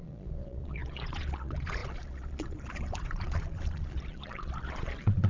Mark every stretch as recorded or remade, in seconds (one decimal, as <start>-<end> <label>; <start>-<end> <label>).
0.0-5.3 remade